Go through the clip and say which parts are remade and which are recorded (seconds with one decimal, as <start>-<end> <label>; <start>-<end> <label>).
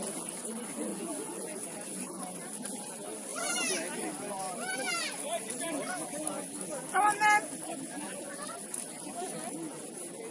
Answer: 0.0-0.9 recorded; 0.9-2.2 remade; 2.2-10.3 recorded